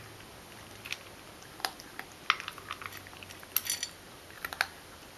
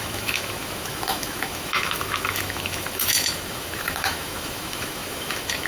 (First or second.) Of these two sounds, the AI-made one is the second